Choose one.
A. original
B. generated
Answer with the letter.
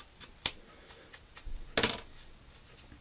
A